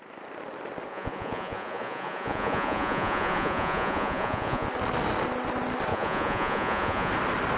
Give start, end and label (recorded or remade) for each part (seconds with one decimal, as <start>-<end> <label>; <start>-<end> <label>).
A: 0.0-0.9 recorded; 0.9-4.7 remade; 4.7-5.9 recorded; 5.9-7.1 remade; 7.1-7.6 recorded